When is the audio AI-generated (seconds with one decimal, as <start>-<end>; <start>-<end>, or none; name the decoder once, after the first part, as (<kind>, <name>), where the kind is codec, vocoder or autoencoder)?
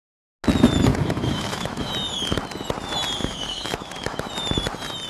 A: 0.9-1.9 (autoencoder, DAC-VAE); 3.2-4.3